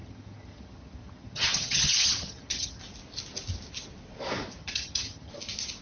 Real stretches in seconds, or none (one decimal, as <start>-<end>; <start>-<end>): 2.8-4.6; 5.3-5.8